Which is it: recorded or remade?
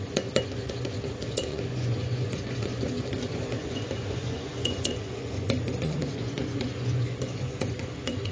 remade